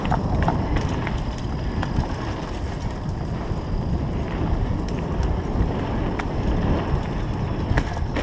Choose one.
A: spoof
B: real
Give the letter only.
B